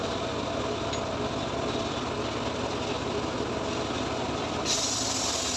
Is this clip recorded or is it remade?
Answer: recorded